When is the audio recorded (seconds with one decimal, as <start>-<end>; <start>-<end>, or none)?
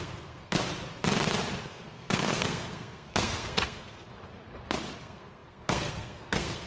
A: 0.6-1.6; 4.1-5.0